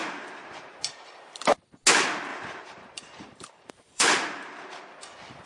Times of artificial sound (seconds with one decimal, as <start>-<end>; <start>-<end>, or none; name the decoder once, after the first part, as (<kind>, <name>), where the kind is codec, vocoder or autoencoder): 0.0-0.8 (vocoder, BigVGAN v2); 2.3-4.7